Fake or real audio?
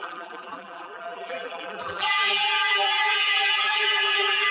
fake